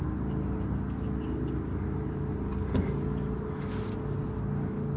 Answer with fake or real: real